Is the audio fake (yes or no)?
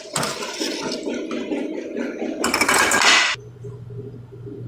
no